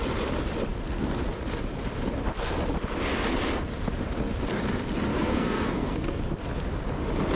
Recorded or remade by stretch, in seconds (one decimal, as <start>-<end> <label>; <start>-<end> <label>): 0.0-5.1 recorded; 5.1-6.2 remade; 6.2-7.4 recorded